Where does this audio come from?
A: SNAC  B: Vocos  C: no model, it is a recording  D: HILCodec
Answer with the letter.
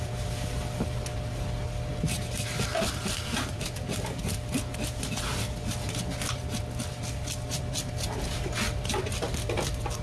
C